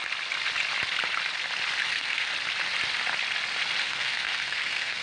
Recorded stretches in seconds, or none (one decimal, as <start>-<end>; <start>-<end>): 0.0-1.9; 2.3-3.8